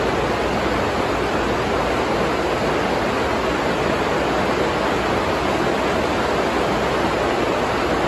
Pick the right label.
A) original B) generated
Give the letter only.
A